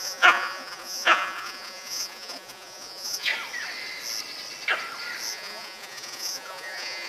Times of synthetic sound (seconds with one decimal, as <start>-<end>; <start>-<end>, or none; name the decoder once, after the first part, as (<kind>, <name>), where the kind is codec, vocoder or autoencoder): 0.0-3.3 (vocoder, Vocos); 5.3-7.1